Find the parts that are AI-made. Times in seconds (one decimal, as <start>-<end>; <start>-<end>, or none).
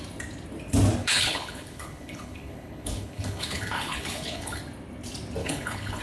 1.0-4.6; 5.4-6.0